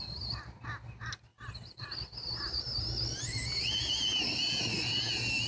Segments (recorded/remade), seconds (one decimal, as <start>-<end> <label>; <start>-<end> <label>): 0.0-5.5 recorded